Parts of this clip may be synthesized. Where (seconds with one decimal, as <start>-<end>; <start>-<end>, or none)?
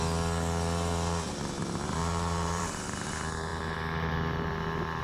2.0-2.6